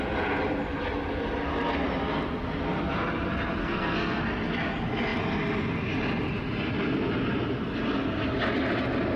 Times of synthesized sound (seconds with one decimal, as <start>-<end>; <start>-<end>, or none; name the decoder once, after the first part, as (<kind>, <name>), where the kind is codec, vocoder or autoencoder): 3.6-4.2 (codec, SNAC)